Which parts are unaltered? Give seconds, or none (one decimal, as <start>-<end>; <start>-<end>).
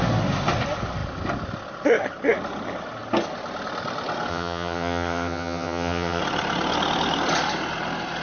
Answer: 0.0-4.3; 6.2-8.2